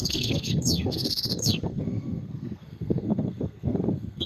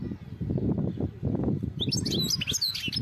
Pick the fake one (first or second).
first